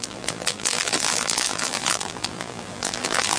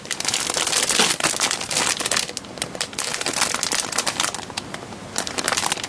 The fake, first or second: first